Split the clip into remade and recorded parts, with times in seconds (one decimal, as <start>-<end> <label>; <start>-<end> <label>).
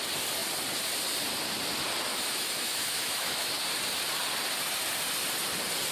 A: 0.0-2.1 recorded; 2.1-3.5 remade; 3.5-5.9 recorded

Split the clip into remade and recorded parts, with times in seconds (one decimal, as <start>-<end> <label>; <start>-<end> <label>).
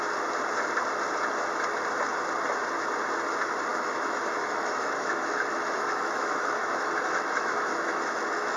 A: 0.0-3.7 recorded; 3.7-8.6 remade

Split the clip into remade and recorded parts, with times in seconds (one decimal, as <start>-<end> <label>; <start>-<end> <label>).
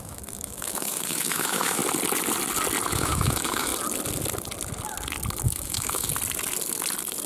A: 0.0-1.8 remade; 1.8-2.9 recorded; 2.9-3.7 remade; 3.7-5.4 recorded; 5.4-6.1 remade; 6.1-7.3 recorded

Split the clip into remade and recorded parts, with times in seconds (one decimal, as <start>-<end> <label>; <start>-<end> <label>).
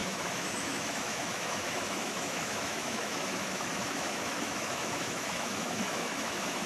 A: 0.0-6.7 remade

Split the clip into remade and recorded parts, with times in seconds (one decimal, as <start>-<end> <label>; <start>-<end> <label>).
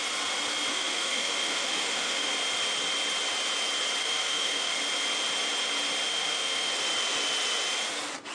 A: 0.0-0.7 recorded; 0.7-2.3 remade; 2.3-4.0 recorded; 4.0-4.8 remade; 4.8-6.1 recorded; 6.1-6.7 remade; 6.7-8.3 recorded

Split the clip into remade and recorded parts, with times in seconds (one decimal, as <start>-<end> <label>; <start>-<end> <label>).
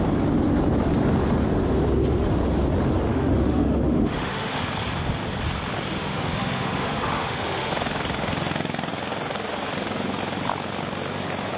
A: 0.0-3.1 recorded; 3.1-4.6 remade; 4.6-5.9 recorded; 5.9-7.7 remade; 7.7-11.6 recorded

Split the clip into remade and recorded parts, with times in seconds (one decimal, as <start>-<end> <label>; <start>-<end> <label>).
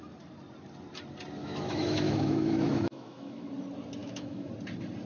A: 0.0-1.4 recorded; 1.4-3.5 remade; 3.5-4.0 recorded; 4.0-4.5 remade; 4.5-5.1 recorded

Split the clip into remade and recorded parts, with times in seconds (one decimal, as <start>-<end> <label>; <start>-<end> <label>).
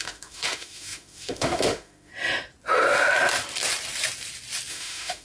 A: 0.0-2.1 remade; 2.1-4.7 recorded; 4.7-5.2 remade